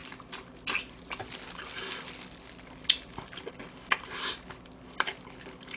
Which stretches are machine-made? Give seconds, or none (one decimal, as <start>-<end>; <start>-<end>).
none